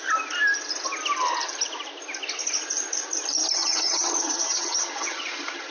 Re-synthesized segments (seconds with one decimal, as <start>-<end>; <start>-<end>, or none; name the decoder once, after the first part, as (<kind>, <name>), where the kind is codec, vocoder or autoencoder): 3.6-5.7 (vocoder, HiFi-GAN)